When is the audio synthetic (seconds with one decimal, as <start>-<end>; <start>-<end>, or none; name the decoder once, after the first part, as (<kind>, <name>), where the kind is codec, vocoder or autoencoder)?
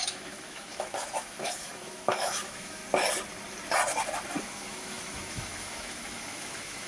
0.0-2.8 (autoencoder, DAC-VAE); 4.4-6.9